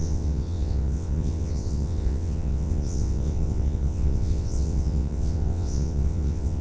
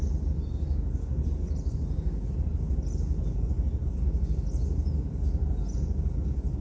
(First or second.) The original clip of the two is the second